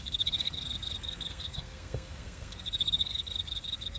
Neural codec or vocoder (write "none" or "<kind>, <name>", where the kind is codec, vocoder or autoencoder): codec, SNAC